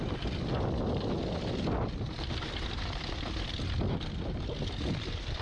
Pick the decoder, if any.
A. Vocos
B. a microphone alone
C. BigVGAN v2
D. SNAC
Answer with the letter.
B